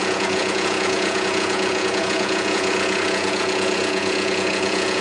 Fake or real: fake